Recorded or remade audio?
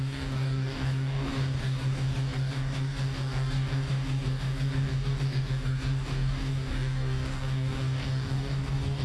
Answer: remade